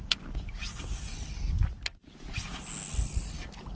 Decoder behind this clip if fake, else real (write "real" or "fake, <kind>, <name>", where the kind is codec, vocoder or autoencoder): real